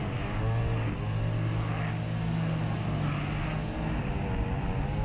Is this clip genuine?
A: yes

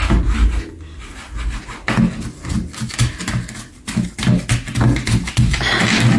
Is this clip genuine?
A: yes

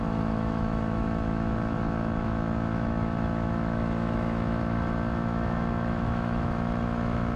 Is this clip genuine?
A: no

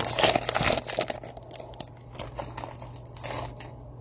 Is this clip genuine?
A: yes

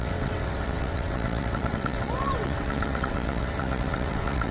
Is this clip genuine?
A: no